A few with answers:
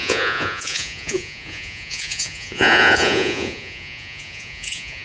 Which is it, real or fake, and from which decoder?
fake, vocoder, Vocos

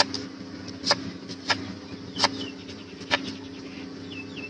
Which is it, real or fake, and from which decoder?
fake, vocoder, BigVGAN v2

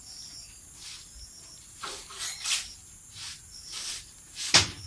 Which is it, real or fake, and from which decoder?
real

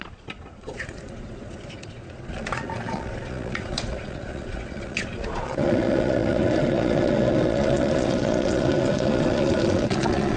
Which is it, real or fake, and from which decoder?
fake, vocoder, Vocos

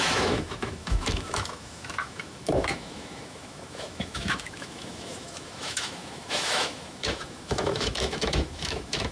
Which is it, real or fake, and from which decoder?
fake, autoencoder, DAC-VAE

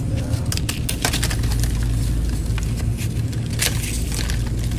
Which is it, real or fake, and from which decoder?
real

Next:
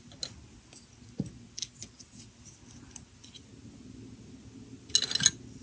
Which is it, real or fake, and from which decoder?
real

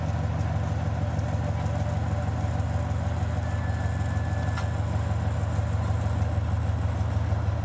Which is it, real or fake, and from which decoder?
real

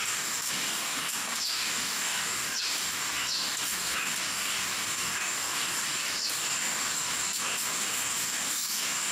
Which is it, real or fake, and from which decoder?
fake, codec, DAC